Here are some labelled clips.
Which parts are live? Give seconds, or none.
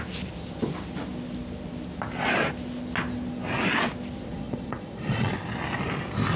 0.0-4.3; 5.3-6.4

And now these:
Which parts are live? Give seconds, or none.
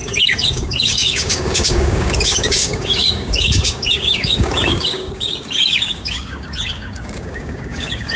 none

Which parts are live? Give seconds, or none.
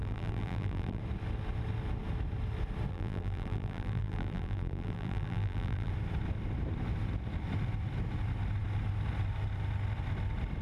1.0-2.9; 5.9-10.6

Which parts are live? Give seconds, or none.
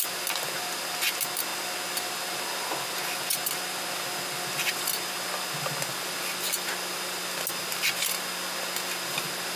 0.0-9.6